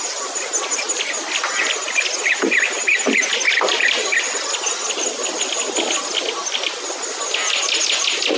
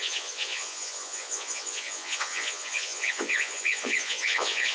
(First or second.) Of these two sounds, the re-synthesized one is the second